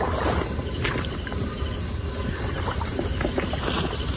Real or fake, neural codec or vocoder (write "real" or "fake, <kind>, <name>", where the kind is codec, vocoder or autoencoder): fake, vocoder, BigVGAN v2